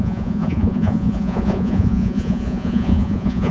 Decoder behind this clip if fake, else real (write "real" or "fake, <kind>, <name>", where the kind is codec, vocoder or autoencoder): fake, vocoder, Vocos